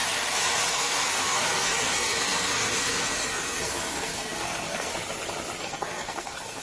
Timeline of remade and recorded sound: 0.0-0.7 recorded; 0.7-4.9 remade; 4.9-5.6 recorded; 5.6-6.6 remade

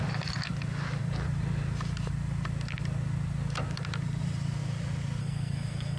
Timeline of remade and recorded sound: 0.0-5.2 recorded; 5.2-6.0 remade

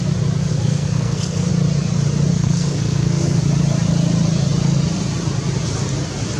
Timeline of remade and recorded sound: 0.0-0.5 recorded; 0.5-1.5 remade; 1.5-2.3 recorded; 2.3-3.4 remade; 3.4-6.4 recorded

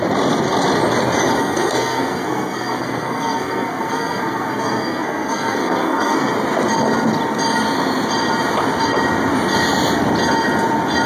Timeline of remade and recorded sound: 0.0-1.4 recorded; 1.4-6.3 remade; 6.3-11.1 recorded

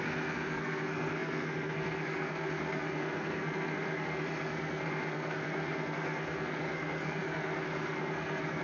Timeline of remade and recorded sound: 0.0-8.6 remade

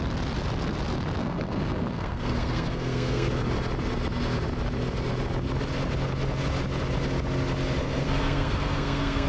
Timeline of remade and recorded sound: 0.0-1.2 recorded; 1.2-3.3 remade; 3.3-7.8 recorded; 7.8-9.3 remade

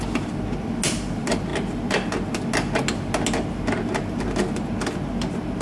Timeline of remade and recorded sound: 0.0-5.6 recorded